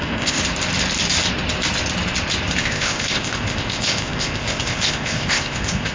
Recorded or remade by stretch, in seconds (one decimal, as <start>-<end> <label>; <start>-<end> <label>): 0.0-0.4 remade; 0.4-2.6 recorded; 2.6-5.9 remade